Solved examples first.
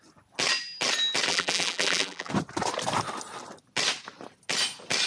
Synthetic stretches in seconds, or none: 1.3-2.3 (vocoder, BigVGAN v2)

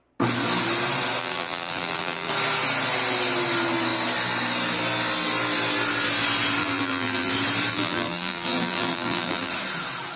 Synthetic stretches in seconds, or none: 1.2-2.3 (vocoder, BigVGAN v2); 6.6-7.3; 7.7-9.5